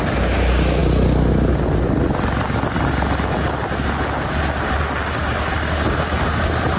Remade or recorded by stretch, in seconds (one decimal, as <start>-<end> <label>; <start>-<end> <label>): 0.0-6.8 recorded

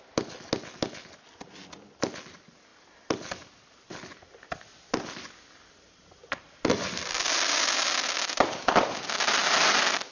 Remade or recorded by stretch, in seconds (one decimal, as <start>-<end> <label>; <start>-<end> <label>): 0.0-10.1 recorded

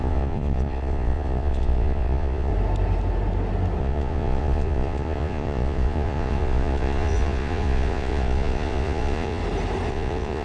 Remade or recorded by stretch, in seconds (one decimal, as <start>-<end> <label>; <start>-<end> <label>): 0.0-2.5 remade; 2.5-3.8 recorded; 3.8-9.4 remade; 9.4-9.9 recorded; 9.9-10.4 remade

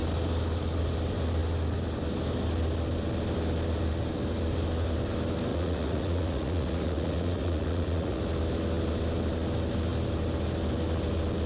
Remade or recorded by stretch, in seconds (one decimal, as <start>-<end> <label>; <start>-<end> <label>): 0.0-5.5 recorded; 5.5-8.2 remade; 8.2-11.5 recorded

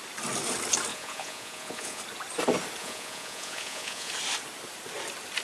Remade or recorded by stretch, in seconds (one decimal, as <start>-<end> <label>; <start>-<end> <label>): 0.0-0.9 recorded; 0.9-2.0 remade; 2.0-2.8 recorded; 2.8-4.1 remade; 4.1-5.4 recorded

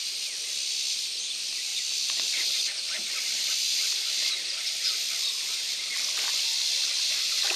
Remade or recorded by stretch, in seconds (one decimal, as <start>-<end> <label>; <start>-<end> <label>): 0.0-7.6 recorded

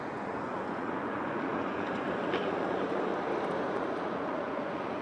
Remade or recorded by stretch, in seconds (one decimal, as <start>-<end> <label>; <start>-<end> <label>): 0.0-3.1 remade; 3.1-3.7 recorded; 3.7-5.0 remade